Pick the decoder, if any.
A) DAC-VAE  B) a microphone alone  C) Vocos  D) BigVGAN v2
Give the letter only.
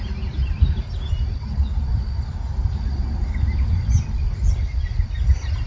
B